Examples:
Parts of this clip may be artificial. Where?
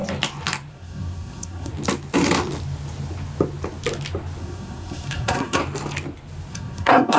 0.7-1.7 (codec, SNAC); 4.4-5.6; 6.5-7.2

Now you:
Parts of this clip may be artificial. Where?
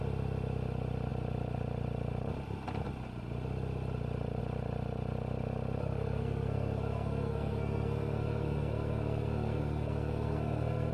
5.8-10.9 (codec, SNAC)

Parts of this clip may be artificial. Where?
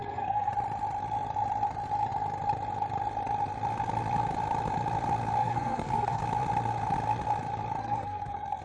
0.0-0.5 (codec, SNAC); 5.4-6.2; 7.8-8.6